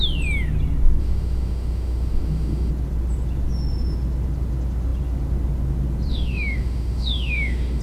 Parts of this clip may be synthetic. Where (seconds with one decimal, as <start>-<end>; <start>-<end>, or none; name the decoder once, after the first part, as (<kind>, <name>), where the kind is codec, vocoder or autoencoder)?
1.0-2.7 (autoencoder, DAC-VAE); 6.1-7.8